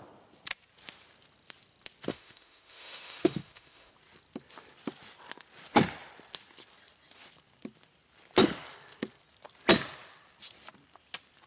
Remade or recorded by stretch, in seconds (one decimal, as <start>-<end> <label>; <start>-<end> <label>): 0.0-2.1 recorded; 2.1-3.9 remade; 3.9-11.5 recorded